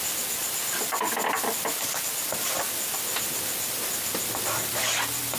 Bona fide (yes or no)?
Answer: no